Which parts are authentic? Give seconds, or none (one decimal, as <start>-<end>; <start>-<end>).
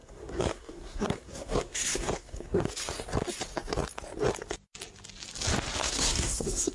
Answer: 2.6-5.8